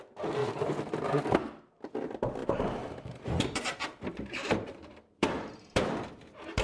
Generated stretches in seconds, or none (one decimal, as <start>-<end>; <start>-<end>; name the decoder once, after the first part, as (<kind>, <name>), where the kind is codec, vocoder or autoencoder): 0.4-1.2 (vocoder, BigVGAN v2); 2.4-6.6